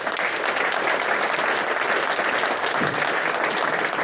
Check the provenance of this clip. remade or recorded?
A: recorded